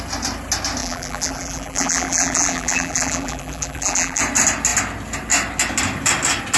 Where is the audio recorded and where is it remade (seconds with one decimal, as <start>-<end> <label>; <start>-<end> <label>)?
0.0-0.8 recorded; 0.8-4.2 remade; 4.2-6.6 recorded